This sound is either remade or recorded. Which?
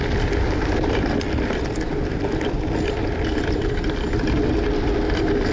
recorded